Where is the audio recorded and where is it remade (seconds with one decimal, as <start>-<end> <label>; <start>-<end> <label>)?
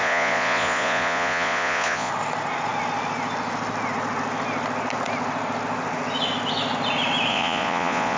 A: 0.0-2.1 remade; 2.1-7.3 recorded; 7.3-8.2 remade